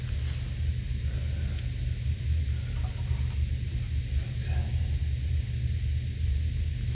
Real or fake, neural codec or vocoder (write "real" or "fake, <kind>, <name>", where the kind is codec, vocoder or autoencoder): real